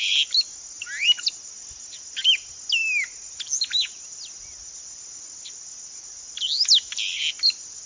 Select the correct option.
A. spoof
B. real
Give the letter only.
B